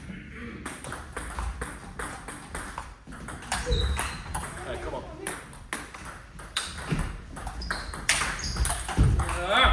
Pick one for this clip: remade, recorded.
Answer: recorded